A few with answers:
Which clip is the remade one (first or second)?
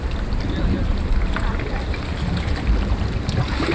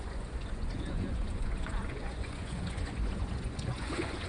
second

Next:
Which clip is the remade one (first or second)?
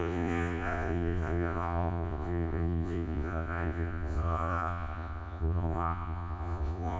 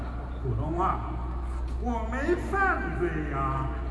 first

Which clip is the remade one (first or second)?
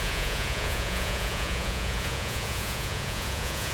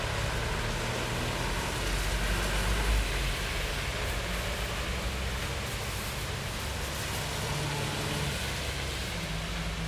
first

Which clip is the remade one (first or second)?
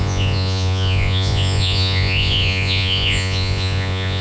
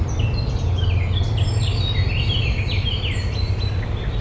first